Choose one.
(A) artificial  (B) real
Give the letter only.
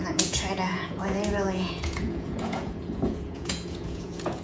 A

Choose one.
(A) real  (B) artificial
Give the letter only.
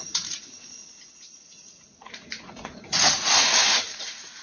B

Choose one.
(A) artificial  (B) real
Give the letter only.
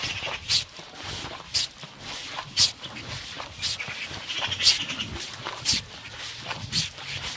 B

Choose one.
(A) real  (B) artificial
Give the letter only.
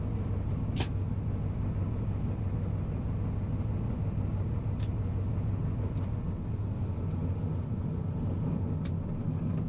A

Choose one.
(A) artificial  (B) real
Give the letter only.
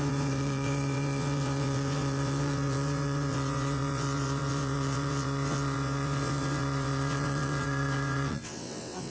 A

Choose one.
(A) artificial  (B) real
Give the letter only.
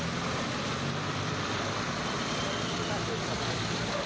A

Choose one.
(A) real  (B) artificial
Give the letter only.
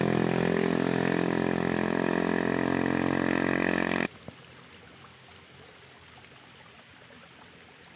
A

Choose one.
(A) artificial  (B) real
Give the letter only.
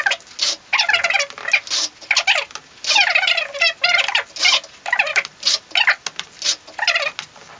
B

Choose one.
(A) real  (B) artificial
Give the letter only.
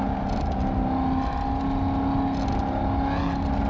A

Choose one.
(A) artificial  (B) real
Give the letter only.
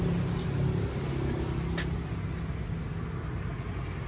B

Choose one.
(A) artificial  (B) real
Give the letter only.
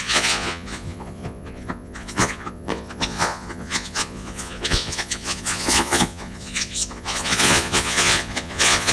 A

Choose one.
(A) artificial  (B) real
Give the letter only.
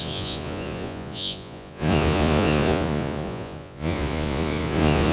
A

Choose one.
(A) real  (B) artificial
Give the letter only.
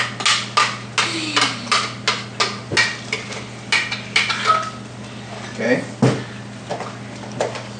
A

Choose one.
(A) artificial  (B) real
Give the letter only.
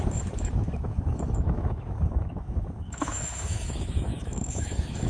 A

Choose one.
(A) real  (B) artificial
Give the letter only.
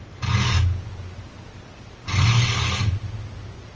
A